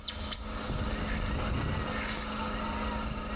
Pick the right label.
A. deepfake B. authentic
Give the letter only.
B